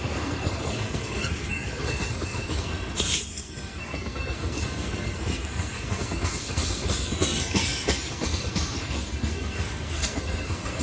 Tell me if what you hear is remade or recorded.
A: remade